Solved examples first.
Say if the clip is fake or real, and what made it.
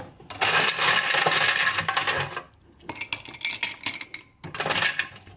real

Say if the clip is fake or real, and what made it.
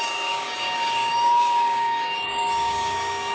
fake, codec, DAC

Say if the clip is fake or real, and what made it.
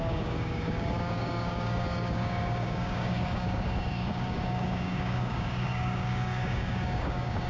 fake, codec, DAC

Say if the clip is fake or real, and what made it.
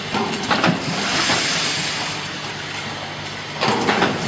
real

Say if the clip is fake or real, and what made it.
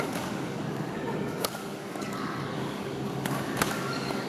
fake, codec, DAC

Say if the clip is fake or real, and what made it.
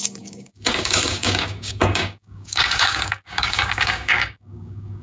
fake, codec, DAC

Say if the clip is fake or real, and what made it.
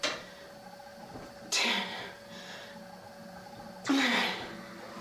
real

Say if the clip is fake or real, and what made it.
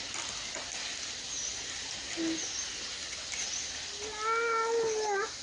real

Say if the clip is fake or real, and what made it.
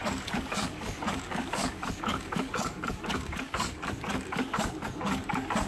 fake, codec, DAC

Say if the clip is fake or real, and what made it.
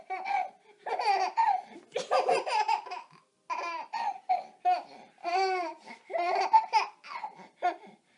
real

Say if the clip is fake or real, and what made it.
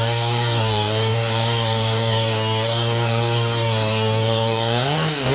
fake, codec, DAC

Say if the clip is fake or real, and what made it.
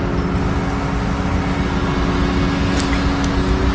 real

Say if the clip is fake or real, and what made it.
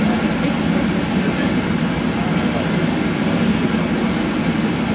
real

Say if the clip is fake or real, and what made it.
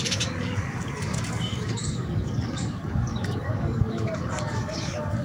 fake, codec, DAC